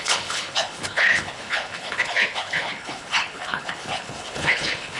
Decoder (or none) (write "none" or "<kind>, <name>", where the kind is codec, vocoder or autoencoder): codec, HILCodec